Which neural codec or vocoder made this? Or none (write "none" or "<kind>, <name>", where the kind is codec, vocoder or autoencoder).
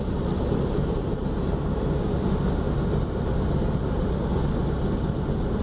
none